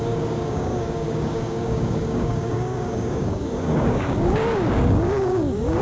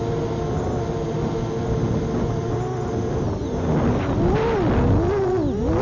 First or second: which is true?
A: second